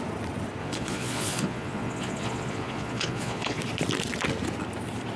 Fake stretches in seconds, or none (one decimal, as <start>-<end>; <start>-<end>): 0.6-3.6